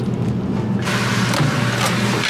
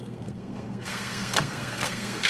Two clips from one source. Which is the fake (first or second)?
second